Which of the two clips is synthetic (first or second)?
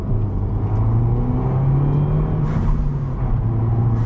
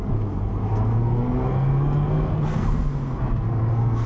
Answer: second